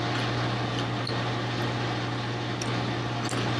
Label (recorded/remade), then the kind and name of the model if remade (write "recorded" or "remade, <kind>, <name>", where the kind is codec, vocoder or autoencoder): recorded